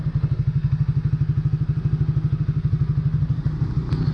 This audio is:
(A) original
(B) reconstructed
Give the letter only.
A